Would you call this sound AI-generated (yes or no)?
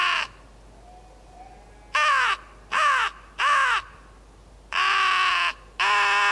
no